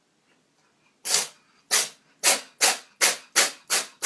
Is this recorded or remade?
recorded